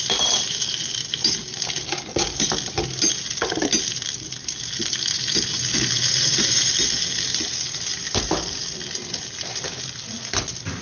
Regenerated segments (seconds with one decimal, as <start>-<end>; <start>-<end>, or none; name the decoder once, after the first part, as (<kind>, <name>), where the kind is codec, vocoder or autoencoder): none